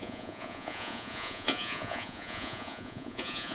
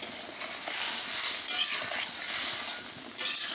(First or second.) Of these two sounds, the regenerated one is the first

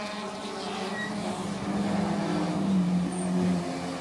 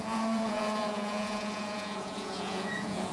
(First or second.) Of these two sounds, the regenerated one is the second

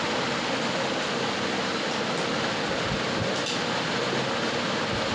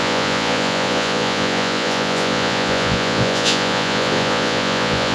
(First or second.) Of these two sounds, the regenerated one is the second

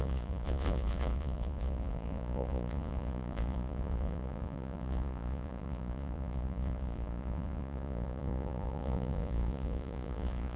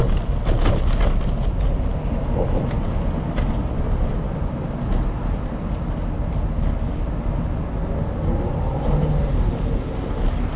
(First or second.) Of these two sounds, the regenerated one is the first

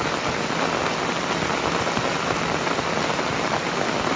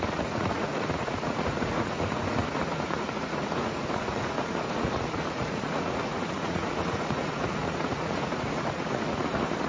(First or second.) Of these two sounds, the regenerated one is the second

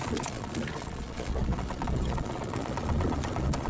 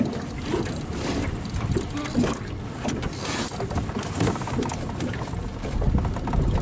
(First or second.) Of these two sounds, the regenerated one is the first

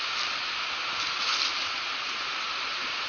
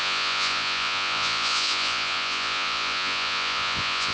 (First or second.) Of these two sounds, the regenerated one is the second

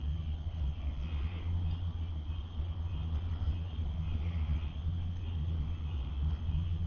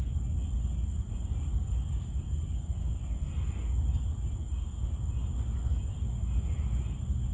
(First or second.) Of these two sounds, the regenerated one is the first